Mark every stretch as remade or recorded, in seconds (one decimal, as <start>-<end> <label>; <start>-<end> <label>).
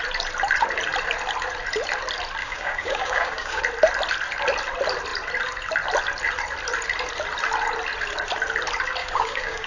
0.0-2.4 recorded; 2.4-3.6 remade; 3.6-9.0 recorded; 9.0-9.7 remade